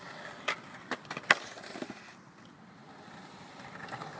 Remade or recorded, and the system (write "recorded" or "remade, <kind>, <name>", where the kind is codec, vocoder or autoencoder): recorded